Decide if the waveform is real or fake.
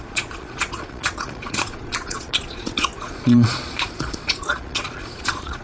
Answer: fake